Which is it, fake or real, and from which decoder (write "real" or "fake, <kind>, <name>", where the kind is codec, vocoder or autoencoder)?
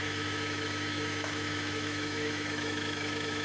fake, autoencoder, DAC-VAE